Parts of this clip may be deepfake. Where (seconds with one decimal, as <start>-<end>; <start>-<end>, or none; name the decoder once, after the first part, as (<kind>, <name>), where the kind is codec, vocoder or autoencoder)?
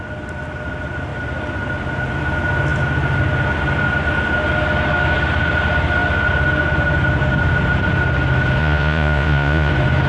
8.6-9.7 (vocoder, Vocos)